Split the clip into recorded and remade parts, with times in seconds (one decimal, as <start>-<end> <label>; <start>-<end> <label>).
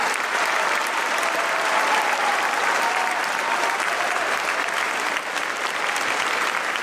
0.0-2.3 recorded; 2.3-4.7 remade; 4.7-6.8 recorded